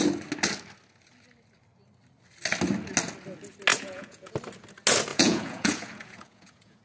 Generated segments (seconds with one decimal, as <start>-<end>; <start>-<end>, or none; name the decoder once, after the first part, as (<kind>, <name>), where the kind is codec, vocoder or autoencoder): 3.7-4.3 (vocoder, Vocos); 5.1-6.8